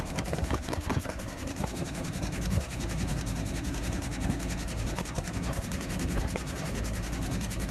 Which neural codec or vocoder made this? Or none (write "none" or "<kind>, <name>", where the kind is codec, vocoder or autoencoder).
codec, SNAC